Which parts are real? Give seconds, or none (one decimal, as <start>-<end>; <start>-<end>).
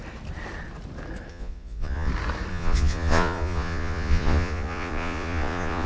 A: 0.0-1.3; 2.1-2.5